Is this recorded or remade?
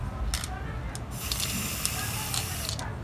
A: recorded